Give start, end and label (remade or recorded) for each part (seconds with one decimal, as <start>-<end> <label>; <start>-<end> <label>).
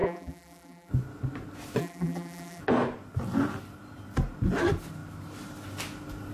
0.0-0.9 remade; 0.9-1.8 recorded; 1.8-2.6 remade; 2.6-6.3 recorded